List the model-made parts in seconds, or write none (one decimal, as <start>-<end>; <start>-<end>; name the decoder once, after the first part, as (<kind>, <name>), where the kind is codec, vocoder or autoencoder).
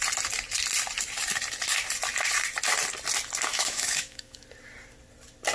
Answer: 3.5-4.4 (autoencoder, DAC-VAE)